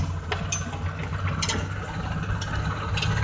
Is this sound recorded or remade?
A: recorded